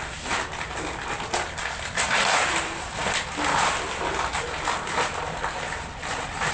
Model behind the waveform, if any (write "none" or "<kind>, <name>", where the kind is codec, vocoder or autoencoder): none